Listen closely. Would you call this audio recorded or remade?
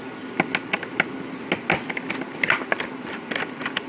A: recorded